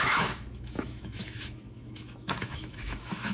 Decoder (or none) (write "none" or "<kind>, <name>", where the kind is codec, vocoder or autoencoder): autoencoder, DAC-VAE